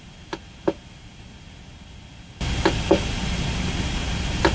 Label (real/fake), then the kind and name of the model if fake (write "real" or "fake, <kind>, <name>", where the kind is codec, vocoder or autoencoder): real